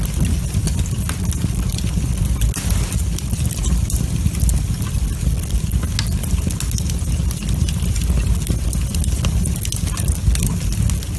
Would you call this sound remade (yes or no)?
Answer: no